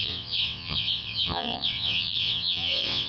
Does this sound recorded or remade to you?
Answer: remade